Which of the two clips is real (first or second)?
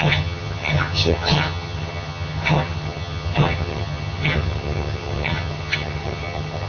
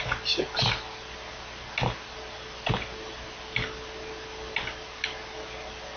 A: second